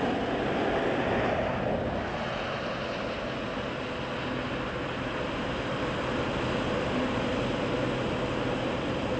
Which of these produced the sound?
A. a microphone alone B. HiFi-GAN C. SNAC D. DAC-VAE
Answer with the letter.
A